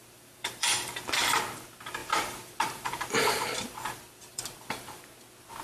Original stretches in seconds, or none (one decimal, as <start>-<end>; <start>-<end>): 1.2-2.0; 5.0-5.6